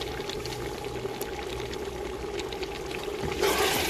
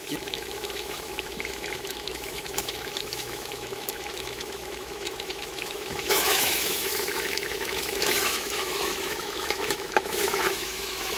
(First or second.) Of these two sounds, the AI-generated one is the second